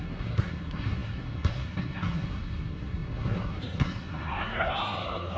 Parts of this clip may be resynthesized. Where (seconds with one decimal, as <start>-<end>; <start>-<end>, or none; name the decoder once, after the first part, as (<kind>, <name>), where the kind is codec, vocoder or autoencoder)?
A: 0.0-5.4 (codec, SNAC)